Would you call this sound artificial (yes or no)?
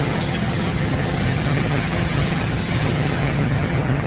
yes